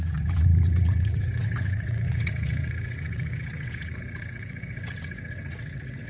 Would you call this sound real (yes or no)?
no